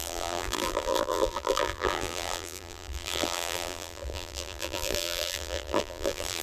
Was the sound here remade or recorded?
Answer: remade